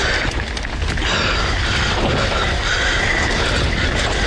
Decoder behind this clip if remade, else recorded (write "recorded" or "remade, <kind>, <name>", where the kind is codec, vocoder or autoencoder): recorded